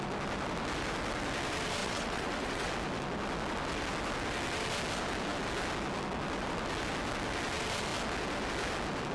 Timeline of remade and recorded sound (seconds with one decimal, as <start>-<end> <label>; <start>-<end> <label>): 0.0-1.8 recorded; 1.8-2.7 remade; 2.7-9.1 recorded